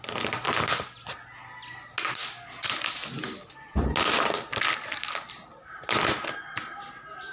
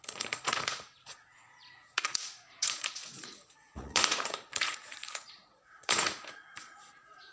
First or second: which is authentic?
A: first